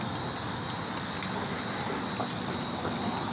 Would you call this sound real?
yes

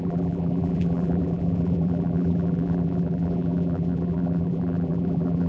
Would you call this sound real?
no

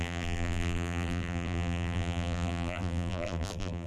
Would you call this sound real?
no